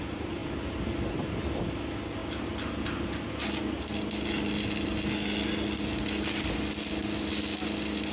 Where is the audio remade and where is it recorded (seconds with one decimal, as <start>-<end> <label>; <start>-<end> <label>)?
0.0-8.1 recorded